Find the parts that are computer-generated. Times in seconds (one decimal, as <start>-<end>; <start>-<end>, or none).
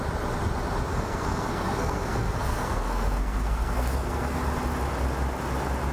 0.9-4.4